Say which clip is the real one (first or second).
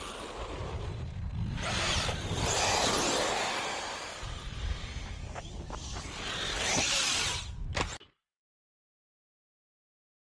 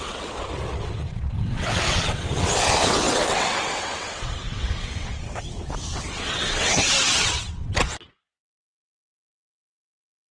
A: first